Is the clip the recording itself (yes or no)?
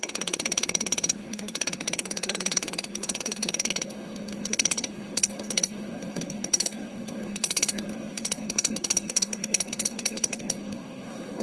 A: no